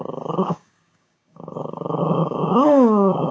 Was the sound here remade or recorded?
remade